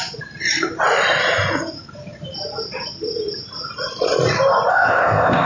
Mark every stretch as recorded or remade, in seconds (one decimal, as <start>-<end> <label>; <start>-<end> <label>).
0.0-4.7 recorded; 4.7-5.5 remade